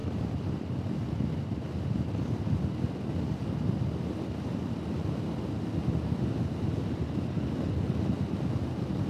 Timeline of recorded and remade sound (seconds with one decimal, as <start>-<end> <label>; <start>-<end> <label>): 0.0-9.1 recorded